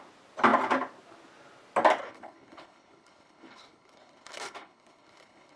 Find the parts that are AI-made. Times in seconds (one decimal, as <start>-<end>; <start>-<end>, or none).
2.0-5.6